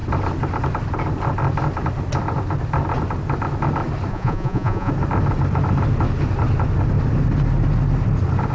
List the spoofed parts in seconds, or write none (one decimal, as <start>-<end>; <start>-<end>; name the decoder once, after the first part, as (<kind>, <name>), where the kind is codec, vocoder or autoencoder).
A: 4.1-4.9 (vocoder, Vocos)